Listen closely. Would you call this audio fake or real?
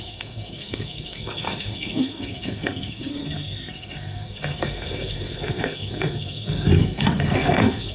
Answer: fake